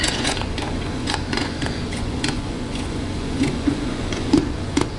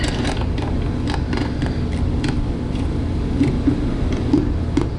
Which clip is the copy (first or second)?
first